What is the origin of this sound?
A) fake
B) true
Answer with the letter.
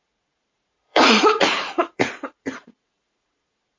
A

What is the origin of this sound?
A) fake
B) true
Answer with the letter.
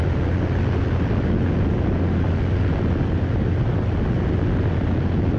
B